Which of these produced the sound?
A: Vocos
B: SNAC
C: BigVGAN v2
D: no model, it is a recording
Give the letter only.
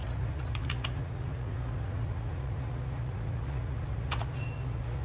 A